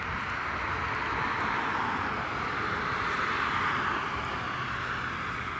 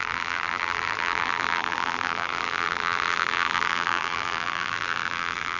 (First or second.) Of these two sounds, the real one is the first